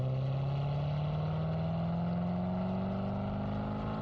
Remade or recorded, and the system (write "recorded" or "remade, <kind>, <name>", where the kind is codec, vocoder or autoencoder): recorded